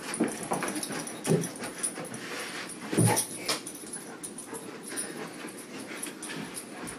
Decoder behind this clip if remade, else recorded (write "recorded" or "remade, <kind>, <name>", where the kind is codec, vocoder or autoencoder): recorded